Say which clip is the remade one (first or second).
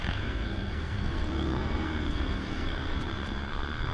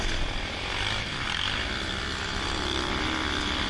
first